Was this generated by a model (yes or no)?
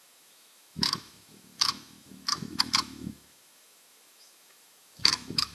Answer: yes